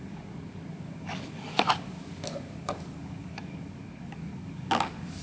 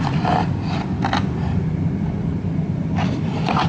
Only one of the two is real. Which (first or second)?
second